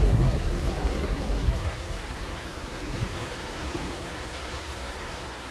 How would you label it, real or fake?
fake